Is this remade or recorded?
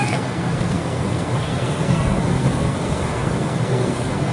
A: remade